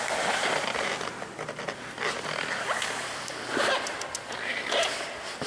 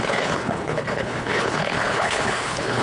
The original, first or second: first